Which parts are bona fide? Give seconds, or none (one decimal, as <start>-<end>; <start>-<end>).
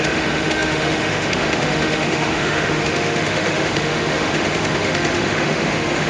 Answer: none